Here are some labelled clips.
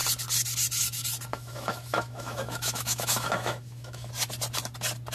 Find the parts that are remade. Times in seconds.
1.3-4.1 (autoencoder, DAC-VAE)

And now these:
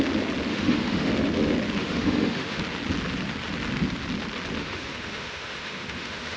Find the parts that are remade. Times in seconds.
0.5-1.1 (autoencoder, DAC-VAE); 1.8-2.6; 4.6-6.4

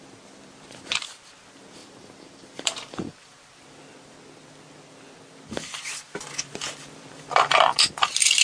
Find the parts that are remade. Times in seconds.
1.8-3.3 (vocoder, BigVGAN v2)

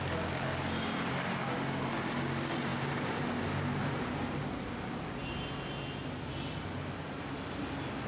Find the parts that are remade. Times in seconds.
2.7-5.4 (vocoder, BigVGAN v2)

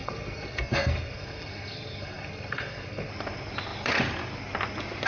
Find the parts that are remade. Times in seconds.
0.0-3.1 (codec, SNAC)

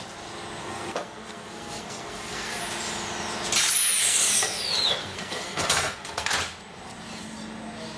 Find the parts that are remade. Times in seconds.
0.6-2.6 (codec, SNAC); 4.0-4.6; 5.0-6.3

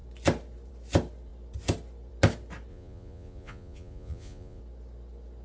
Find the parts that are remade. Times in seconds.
2.7-4.6 (vocoder, Vocos)